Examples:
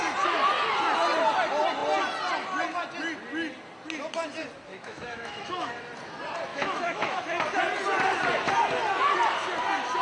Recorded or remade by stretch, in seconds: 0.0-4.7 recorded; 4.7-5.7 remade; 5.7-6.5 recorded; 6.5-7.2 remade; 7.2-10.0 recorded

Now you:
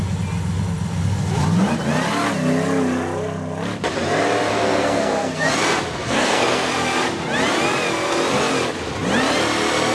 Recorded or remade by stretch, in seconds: 0.0-4.5 recorded; 4.5-5.5 remade; 5.5-6.0 recorded; 6.0-6.7 remade; 6.7-9.9 recorded

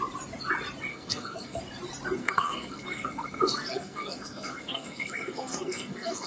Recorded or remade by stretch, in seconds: 0.0-0.9 recorded; 0.9-1.6 remade; 1.6-2.2 recorded; 2.2-6.3 remade

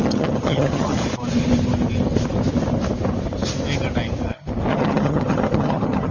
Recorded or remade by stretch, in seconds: 0.0-1.0 remade; 1.0-4.7 recorded; 4.7-6.1 remade